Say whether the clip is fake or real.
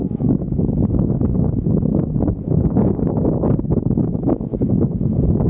fake